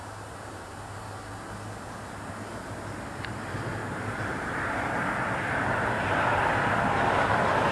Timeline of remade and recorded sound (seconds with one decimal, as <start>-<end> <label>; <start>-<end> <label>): 0.0-3.0 recorded; 3.0-7.7 remade